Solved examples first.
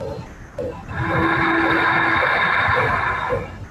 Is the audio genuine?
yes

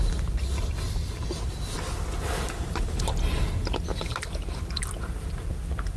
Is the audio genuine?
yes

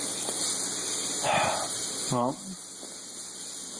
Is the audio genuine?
yes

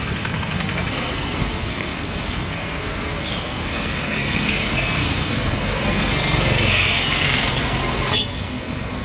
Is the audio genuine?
no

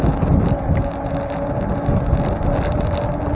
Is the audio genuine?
yes